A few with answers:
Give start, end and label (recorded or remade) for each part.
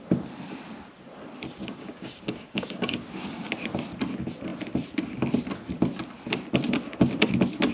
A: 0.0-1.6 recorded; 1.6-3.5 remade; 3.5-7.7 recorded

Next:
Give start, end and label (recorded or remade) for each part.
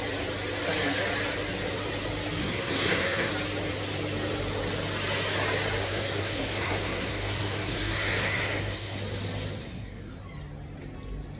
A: 0.0-2.4 recorded; 2.4-3.3 remade; 3.3-5.8 recorded; 5.8-9.0 remade; 9.0-9.6 recorded; 9.6-10.1 remade; 10.1-11.4 recorded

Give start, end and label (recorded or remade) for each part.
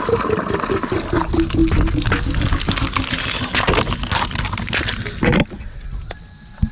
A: 0.0-6.7 recorded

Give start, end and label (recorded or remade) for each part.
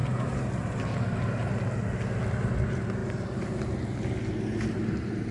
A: 0.0-0.8 remade; 0.8-5.3 recorded